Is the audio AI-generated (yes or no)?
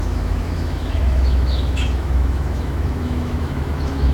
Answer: yes